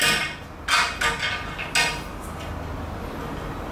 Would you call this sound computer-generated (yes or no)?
no